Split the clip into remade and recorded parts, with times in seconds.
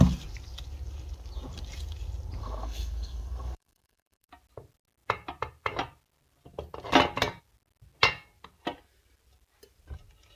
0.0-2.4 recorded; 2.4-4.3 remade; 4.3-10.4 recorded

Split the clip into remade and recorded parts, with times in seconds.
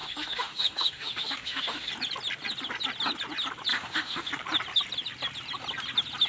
0.0-1.9 remade; 1.9-3.7 recorded; 3.7-4.3 remade; 4.3-6.3 recorded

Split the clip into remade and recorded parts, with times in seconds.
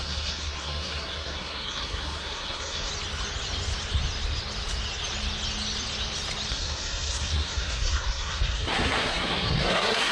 0.0-2.9 remade; 2.9-6.5 recorded; 6.5-10.1 remade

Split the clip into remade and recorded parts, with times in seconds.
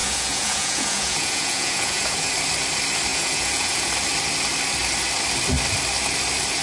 0.0-2.3 remade; 2.3-3.1 recorded; 3.1-3.9 remade; 3.9-6.6 recorded